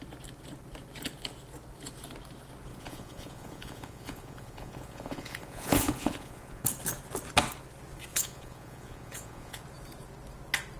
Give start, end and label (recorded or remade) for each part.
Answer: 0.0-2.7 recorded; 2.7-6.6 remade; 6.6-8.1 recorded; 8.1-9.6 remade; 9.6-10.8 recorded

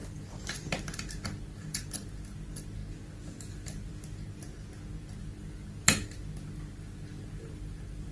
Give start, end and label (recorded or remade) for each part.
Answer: 0.0-2.8 remade; 2.8-3.5 recorded; 3.5-3.9 remade; 3.9-5.2 recorded; 5.2-8.1 remade

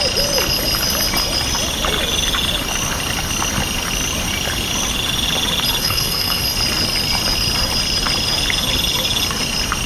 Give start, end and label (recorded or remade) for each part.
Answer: 0.0-5.8 recorded; 5.8-6.4 remade; 6.4-9.9 recorded

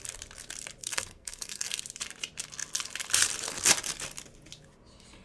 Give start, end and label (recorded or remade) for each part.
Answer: 0.0-0.8 recorded; 0.8-1.8 remade; 1.8-5.2 recorded

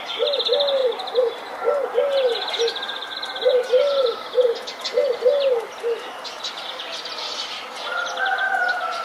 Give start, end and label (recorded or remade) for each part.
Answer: 0.0-9.0 recorded

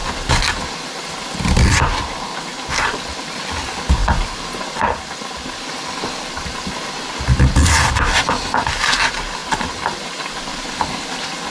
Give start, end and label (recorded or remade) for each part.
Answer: 0.0-2.5 recorded; 2.5-3.4 remade; 3.4-4.0 recorded; 4.0-7.2 remade; 7.2-9.4 recorded; 9.4-11.5 remade

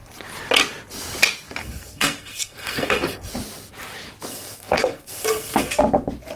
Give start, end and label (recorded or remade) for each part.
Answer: 0.0-1.6 recorded; 1.6-3.3 remade; 3.3-4.3 recorded; 4.3-5.8 remade; 5.8-6.4 recorded

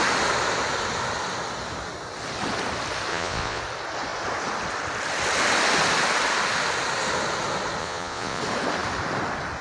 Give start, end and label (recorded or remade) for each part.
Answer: 0.0-3.1 recorded; 3.1-3.6 remade; 3.6-7.8 recorded; 7.8-8.4 remade; 8.4-9.6 recorded